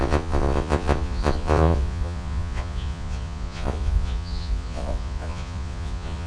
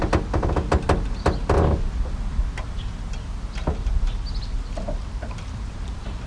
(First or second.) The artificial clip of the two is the first